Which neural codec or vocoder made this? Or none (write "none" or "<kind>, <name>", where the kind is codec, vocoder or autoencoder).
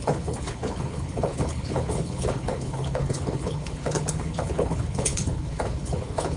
codec, HILCodec